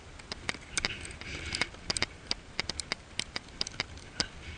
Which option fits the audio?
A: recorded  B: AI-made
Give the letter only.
A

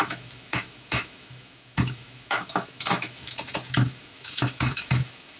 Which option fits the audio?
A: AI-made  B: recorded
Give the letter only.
A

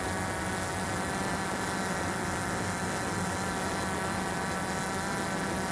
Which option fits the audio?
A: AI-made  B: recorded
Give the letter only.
B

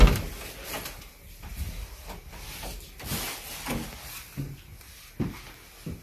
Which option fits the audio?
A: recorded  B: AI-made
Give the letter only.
A